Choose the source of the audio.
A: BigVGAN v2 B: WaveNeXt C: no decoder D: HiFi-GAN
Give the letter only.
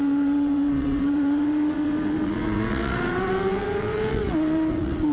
B